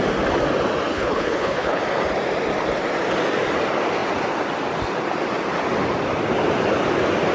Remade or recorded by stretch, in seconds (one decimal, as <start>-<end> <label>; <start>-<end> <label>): 0.0-0.9 recorded; 0.9-1.8 remade; 1.8-7.3 recorded